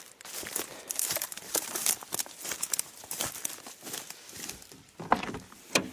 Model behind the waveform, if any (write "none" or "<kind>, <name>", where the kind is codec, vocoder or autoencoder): none